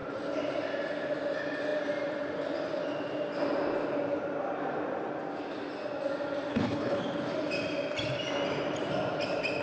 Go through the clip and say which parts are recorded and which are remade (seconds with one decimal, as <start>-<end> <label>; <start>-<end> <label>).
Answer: 0.0-6.5 recorded; 6.5-7.0 remade; 7.0-9.6 recorded